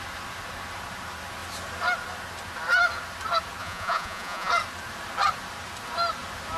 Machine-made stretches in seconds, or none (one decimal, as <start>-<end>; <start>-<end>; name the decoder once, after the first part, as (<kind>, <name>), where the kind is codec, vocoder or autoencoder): 3.6-4.5 (vocoder, Vocos)